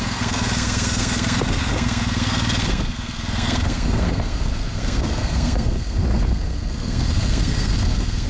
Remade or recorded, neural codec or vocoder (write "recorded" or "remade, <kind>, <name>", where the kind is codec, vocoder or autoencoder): remade, codec, SNAC